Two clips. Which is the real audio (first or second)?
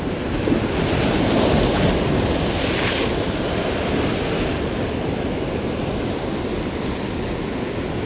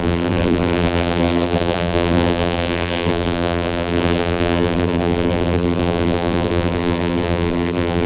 first